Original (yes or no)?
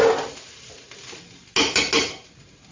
yes